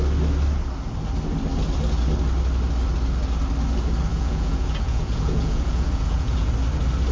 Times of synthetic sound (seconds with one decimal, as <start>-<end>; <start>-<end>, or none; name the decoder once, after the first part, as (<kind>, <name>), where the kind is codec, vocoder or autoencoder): 4.1-6.5 (vocoder, Vocos)